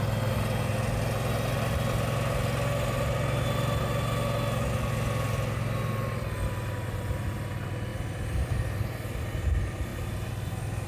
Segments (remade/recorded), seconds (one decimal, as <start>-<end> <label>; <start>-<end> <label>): 0.0-10.9 recorded